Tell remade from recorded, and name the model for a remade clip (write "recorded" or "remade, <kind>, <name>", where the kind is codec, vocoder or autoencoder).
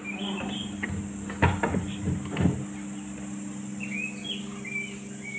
recorded